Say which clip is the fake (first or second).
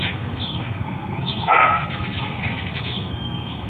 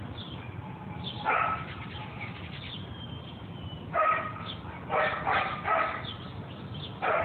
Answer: first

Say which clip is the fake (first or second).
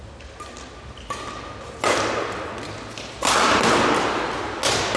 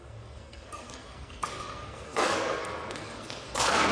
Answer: second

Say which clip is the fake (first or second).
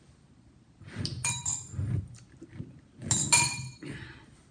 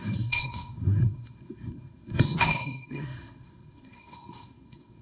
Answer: second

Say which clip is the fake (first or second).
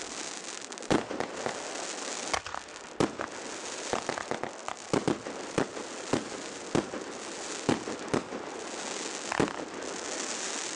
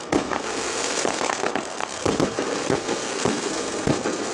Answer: second